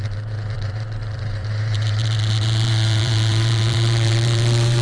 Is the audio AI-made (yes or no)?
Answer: yes